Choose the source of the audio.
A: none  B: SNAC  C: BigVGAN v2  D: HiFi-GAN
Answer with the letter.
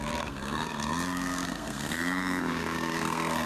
B